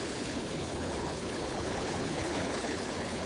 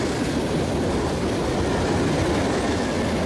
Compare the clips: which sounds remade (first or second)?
first